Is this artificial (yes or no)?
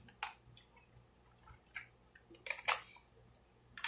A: no